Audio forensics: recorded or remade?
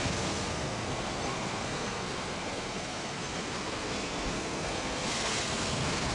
remade